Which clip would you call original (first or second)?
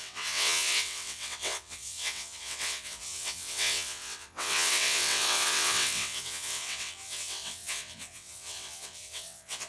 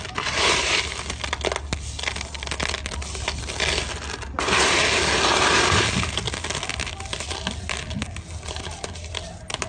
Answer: second